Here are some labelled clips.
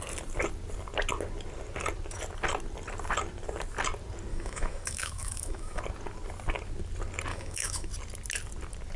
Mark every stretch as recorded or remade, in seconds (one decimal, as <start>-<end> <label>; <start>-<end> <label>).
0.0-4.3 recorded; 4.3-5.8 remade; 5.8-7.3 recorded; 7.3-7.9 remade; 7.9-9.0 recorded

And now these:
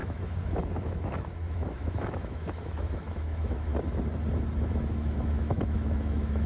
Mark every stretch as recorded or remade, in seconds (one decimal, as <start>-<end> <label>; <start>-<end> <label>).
0.0-3.7 remade; 3.7-4.6 recorded; 4.6-6.5 remade

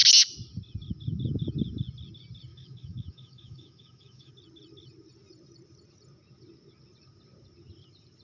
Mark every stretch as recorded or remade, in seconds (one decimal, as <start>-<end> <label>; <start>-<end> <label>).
0.0-2.5 recorded; 2.5-4.3 remade; 4.3-8.2 recorded

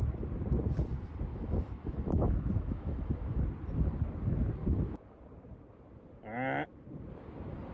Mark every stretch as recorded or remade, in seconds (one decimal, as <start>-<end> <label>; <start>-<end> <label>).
0.0-1.3 recorded; 1.3-3.4 remade; 3.4-7.7 recorded